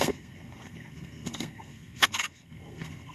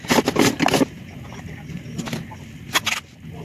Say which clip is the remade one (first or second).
first